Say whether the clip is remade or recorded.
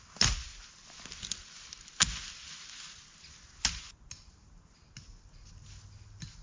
recorded